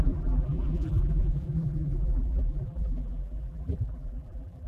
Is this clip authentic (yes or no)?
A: no